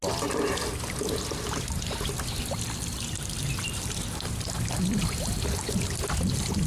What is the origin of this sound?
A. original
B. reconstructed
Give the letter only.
A